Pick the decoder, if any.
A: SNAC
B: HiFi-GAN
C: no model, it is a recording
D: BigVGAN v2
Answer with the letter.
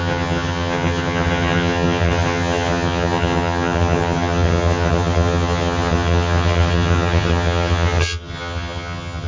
B